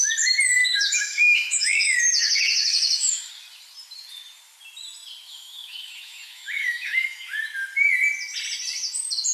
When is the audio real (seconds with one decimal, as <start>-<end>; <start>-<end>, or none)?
0.0-0.6; 3.3-5.3; 7.3-9.3

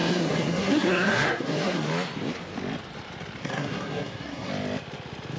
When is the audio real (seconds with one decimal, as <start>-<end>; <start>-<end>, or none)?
1.9-3.4; 4.5-5.4

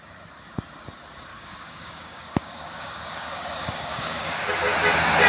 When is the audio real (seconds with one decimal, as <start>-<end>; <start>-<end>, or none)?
0.0-1.3; 4.5-5.3

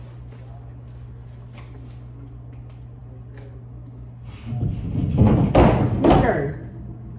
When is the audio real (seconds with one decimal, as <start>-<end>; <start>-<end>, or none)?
0.0-7.2

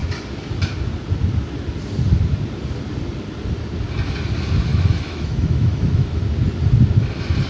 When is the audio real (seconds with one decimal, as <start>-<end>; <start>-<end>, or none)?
0.0-4.7; 6.2-7.5

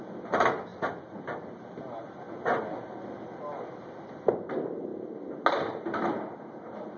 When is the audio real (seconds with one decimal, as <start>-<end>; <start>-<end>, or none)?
0.0-7.0